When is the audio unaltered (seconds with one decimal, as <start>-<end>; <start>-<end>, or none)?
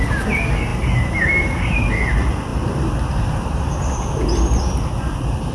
0.0-0.7; 1.9-2.5; 4.0-5.5